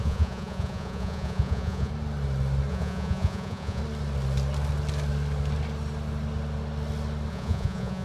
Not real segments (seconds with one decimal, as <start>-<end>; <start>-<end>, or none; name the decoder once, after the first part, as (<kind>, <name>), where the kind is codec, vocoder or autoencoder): 0.0-1.9 (vocoder, Vocos); 2.7-3.8; 7.3-8.0